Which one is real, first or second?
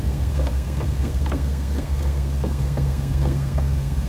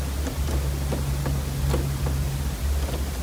second